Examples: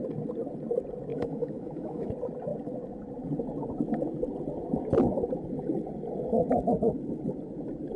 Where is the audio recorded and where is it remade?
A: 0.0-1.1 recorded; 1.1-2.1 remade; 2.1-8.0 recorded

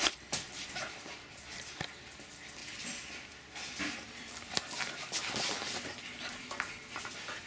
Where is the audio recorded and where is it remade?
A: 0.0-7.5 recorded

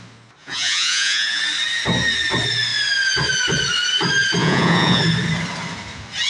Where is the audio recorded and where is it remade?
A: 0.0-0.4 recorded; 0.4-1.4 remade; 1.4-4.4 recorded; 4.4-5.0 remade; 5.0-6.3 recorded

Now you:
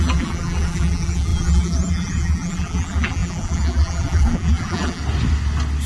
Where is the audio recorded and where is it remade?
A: 0.0-5.0 remade; 5.0-5.9 recorded

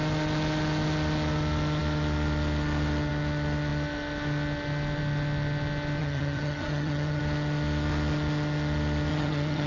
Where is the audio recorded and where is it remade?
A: 0.0-6.0 recorded; 6.0-7.2 remade; 7.2-9.1 recorded; 9.1-9.7 remade

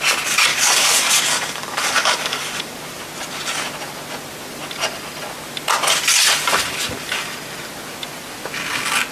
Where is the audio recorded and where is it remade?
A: 0.0-0.5 recorded; 0.5-2.7 remade; 2.7-9.1 recorded